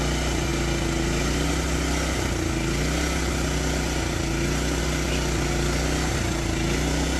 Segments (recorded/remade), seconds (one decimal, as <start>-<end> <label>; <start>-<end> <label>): 0.0-7.2 recorded